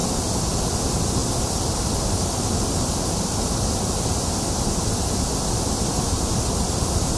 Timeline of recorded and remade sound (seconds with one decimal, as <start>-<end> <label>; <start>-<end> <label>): 0.0-7.2 recorded